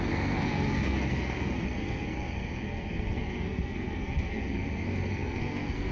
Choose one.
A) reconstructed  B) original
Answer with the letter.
A